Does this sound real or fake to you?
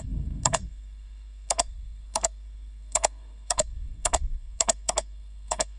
fake